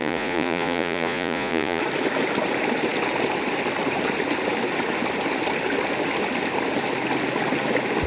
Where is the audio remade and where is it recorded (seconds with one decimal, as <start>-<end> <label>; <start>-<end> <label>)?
0.0-1.8 remade; 1.8-8.1 recorded